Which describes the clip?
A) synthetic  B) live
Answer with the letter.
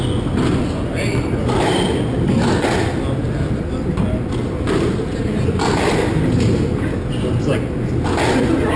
B